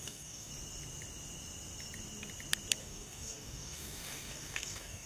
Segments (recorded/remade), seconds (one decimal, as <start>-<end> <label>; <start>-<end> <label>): 0.0-0.5 remade; 0.5-2.8 recorded; 2.8-5.1 remade